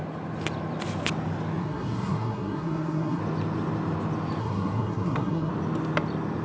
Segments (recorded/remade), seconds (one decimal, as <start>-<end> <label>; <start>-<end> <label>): 0.0-1.6 recorded; 1.6-3.2 remade; 3.2-4.4 recorded; 4.4-5.5 remade; 5.5-6.4 recorded